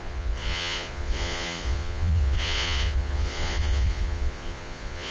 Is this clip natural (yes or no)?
no